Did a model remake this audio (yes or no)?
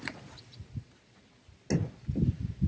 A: no